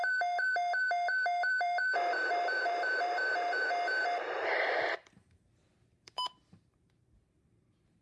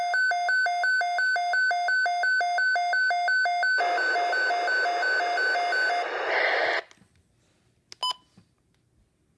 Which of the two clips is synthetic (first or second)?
first